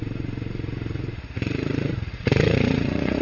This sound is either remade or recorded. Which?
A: remade